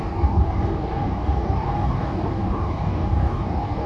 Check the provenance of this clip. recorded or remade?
remade